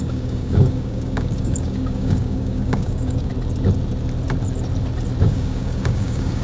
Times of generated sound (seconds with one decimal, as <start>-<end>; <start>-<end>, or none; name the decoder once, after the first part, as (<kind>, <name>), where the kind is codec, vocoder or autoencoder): 0.0-3.3 (codec, DAC); 5.2-6.4